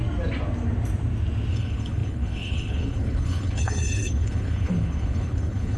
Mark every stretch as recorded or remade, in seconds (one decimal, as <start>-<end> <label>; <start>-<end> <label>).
0.0-1.5 recorded; 1.5-5.8 remade